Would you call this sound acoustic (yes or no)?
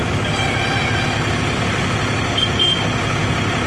yes